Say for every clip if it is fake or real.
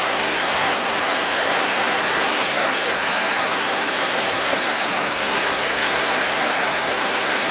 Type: fake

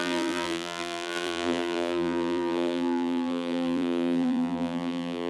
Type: fake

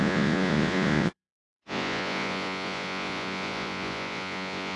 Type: fake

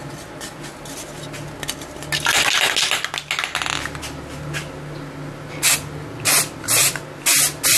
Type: real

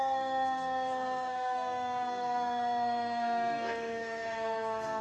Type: fake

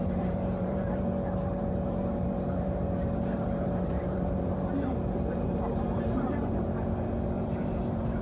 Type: fake